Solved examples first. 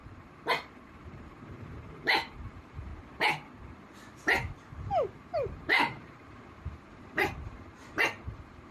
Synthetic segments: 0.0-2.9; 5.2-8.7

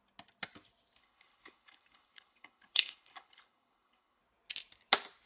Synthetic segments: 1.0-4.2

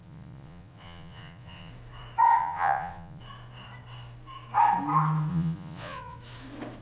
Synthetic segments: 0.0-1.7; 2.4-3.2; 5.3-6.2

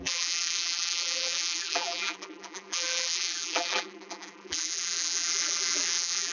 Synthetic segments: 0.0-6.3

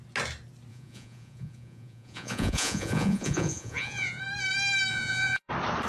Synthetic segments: 0.7-4.2; 4.9-5.5

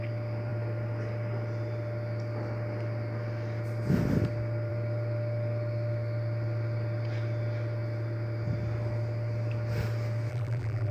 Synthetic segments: 10.3-10.9

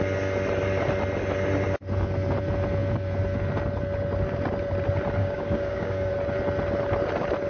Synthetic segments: 5.2-6.1